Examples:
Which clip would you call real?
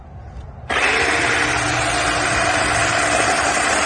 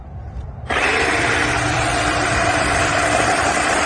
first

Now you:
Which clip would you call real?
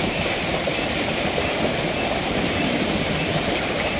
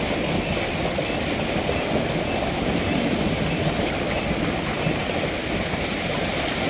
second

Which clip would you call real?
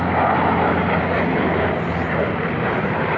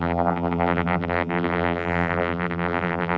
first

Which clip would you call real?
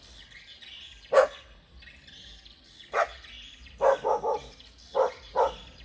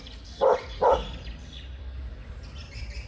first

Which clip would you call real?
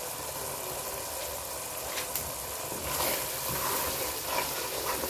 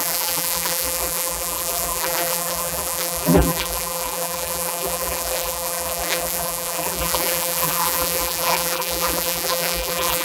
first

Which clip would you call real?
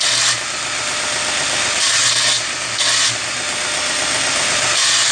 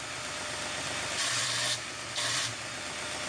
first